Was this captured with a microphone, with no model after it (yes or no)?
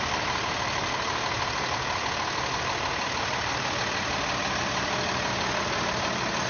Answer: yes